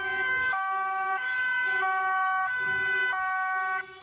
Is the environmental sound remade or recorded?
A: remade